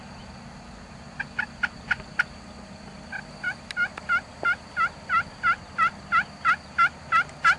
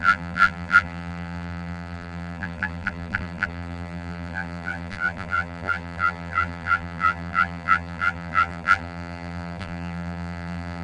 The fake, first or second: second